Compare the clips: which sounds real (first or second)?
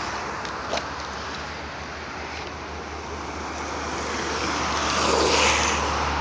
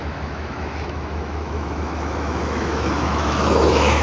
first